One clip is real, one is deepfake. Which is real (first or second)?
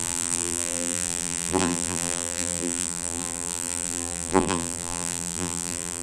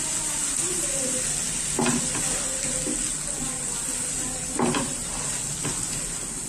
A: second